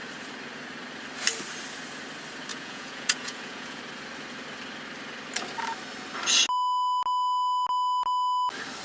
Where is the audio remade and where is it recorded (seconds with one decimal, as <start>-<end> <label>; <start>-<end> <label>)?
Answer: 0.0-2.5 recorded; 2.5-3.8 remade; 3.8-8.8 recorded